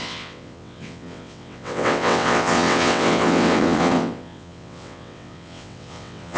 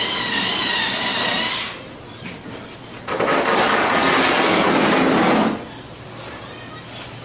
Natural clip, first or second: second